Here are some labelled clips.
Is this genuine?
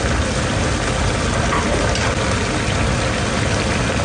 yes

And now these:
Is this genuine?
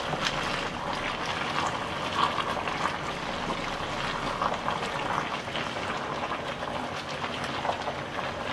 yes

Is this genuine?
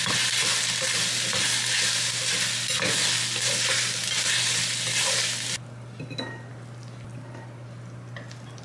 yes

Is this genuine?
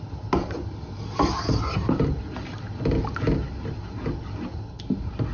yes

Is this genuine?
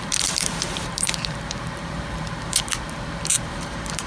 no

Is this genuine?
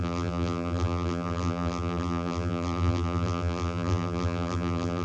no